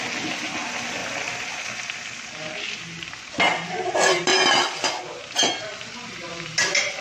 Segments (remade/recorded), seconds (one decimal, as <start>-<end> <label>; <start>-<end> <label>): 0.0-7.0 recorded